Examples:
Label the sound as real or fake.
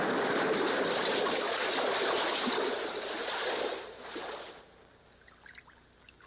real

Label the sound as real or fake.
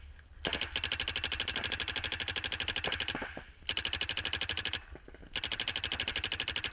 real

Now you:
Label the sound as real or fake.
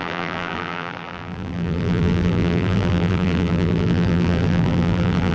fake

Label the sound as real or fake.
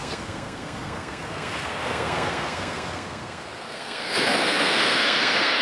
fake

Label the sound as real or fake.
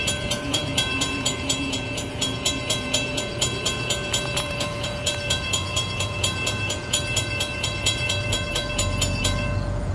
fake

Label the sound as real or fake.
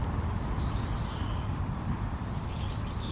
real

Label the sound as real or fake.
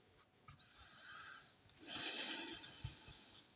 real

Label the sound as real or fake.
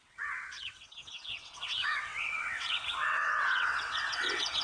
fake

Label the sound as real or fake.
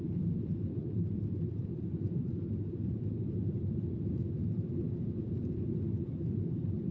real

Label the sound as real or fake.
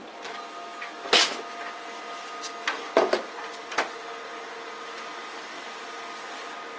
real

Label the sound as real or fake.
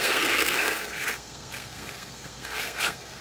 fake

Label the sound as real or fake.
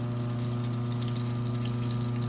real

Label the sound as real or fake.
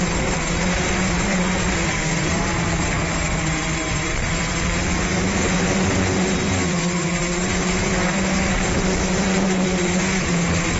fake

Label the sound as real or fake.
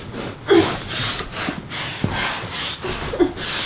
real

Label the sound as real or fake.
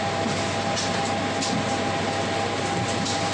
real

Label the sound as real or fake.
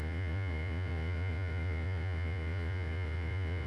fake